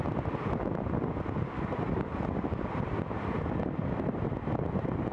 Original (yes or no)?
yes